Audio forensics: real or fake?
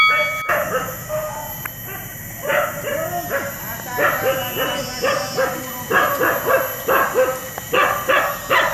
real